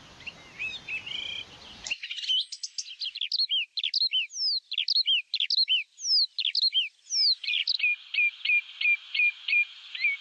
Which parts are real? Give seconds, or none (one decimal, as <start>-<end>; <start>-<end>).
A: 0.0-10.2